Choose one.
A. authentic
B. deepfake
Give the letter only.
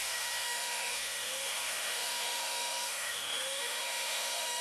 B